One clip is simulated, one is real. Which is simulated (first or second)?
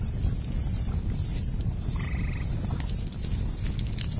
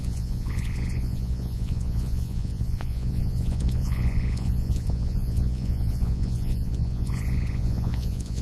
second